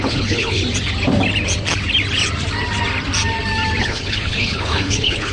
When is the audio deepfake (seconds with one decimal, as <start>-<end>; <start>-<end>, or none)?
0.0-0.6; 3.8-5.3